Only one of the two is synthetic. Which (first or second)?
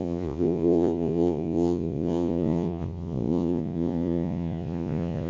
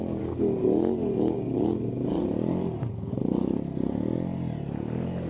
first